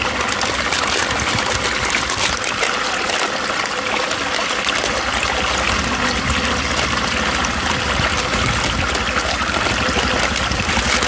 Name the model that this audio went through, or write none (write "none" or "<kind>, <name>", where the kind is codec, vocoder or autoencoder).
none